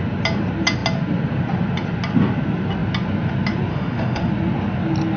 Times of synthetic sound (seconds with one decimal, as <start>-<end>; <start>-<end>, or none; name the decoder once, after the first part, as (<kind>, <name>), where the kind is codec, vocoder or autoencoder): 3.7-4.3 (autoencoder, DAC-VAE)

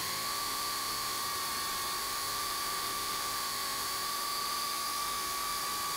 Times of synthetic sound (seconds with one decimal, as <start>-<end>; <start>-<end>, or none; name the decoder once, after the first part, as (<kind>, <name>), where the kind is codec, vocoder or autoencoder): 0.0-1.2 (autoencoder, DAC-VAE); 2.0-5.6

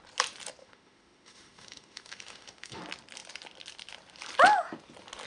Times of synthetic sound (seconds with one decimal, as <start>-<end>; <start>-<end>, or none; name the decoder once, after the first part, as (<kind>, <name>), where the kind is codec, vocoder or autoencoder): 0.6-2.8 (autoencoder, DAC-VAE)